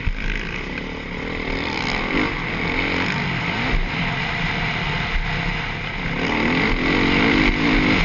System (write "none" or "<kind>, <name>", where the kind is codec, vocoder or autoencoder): none